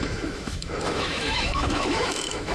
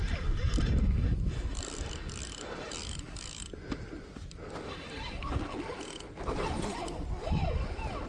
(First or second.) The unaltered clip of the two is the second